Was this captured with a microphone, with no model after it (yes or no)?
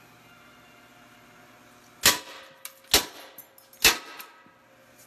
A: yes